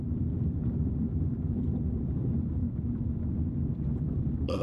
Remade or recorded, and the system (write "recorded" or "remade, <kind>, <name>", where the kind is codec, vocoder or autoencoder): remade, vocoder, BigVGAN v2